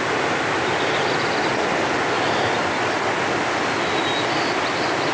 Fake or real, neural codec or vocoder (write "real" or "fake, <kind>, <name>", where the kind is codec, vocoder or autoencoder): real